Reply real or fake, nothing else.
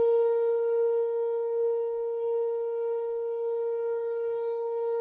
fake